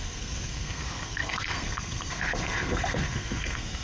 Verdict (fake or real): fake